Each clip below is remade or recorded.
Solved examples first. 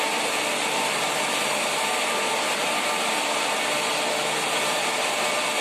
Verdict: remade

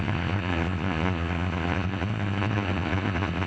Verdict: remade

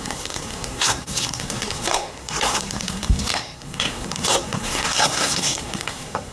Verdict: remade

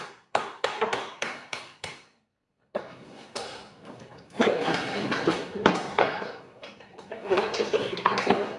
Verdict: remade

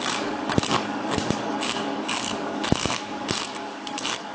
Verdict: remade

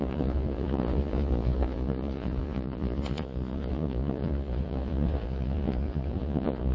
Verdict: remade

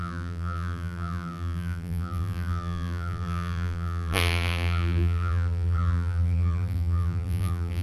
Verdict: remade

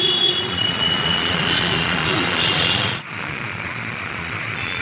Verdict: remade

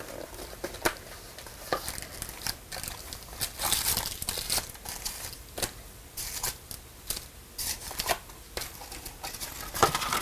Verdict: recorded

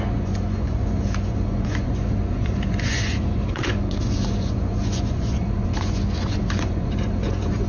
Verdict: remade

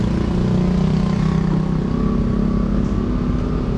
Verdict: recorded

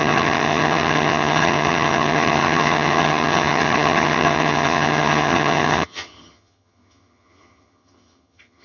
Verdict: remade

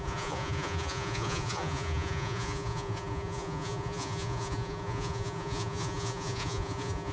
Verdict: remade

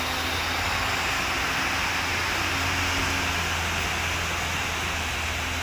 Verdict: recorded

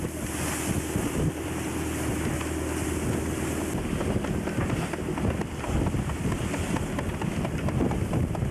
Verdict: recorded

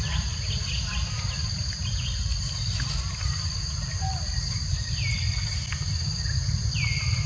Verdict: recorded